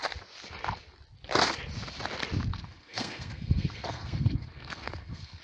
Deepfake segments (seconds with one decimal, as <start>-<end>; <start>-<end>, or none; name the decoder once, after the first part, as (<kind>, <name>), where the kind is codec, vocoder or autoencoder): 2.5-5.4 (codec, SNAC)

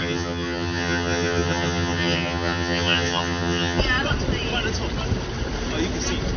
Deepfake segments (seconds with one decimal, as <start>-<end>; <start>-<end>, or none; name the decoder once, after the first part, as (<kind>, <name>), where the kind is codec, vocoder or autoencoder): 0.0-3.8 (vocoder, HiFi-GAN)

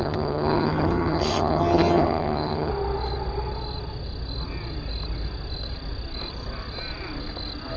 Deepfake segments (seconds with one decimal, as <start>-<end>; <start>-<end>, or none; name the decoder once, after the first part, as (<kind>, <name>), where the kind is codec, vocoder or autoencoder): 0.0-2.7 (vocoder, HiFi-GAN)